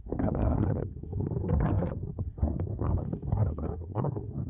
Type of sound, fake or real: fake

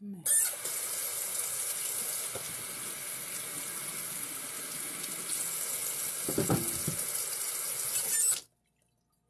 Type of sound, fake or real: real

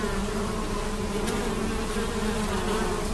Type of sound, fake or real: real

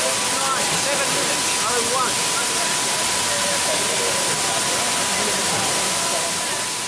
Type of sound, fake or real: real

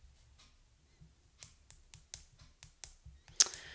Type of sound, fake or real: real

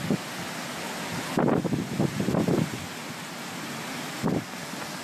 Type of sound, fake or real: real